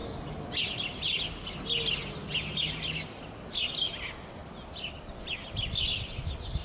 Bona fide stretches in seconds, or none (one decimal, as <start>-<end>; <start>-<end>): 0.0-6.6